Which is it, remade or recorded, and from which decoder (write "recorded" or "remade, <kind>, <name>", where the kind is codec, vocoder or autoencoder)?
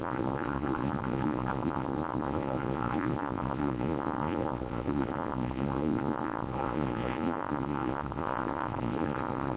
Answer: remade, vocoder, Vocos